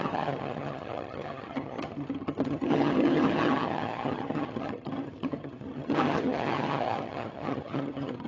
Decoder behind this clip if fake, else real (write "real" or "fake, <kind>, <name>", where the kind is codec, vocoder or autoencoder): fake, vocoder, HiFi-GAN